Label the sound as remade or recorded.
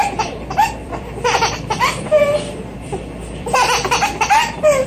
remade